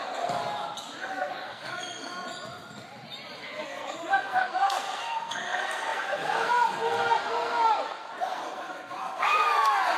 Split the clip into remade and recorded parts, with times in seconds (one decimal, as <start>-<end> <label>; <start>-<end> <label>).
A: 0.0-0.4 remade; 0.4-1.0 recorded; 1.0-2.1 remade; 2.1-3.4 recorded; 3.4-10.0 remade